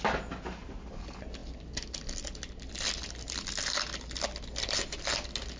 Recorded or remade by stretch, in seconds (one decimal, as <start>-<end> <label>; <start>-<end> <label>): 0.0-5.6 recorded

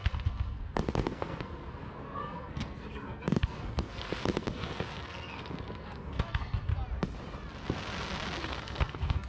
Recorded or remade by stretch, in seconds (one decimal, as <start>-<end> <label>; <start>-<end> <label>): 0.0-6.7 remade; 6.7-8.4 recorded; 8.4-9.3 remade

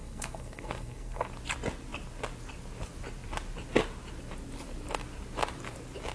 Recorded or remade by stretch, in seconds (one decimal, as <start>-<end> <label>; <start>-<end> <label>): 0.0-1.3 remade; 1.3-6.1 recorded

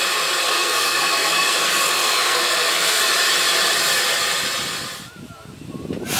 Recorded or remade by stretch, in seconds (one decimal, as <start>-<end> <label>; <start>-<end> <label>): 0.0-0.4 recorded; 0.4-3.0 remade; 3.0-6.2 recorded

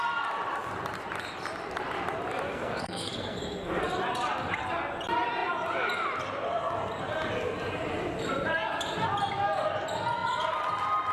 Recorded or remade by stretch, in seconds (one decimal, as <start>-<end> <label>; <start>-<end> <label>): 0.0-2.5 recorded; 2.5-3.8 remade; 3.8-11.1 recorded

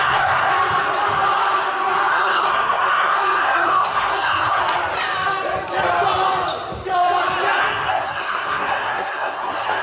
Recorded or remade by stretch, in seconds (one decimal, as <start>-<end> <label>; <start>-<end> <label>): 0.0-0.5 remade; 0.5-2.1 recorded; 2.1-4.6 remade; 4.6-7.6 recorded; 7.6-9.8 remade